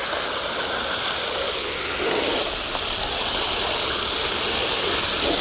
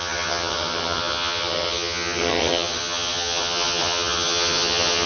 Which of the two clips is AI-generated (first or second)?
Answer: second